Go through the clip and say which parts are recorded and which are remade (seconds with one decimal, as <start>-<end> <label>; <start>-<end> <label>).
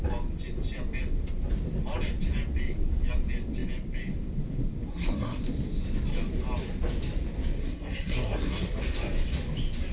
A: 0.0-4.9 recorded; 4.9-5.4 remade; 5.4-7.6 recorded; 7.6-8.8 remade; 8.8-9.9 recorded